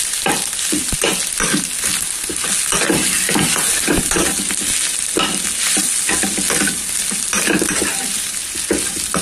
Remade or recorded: recorded